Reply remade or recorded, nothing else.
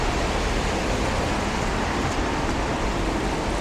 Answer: recorded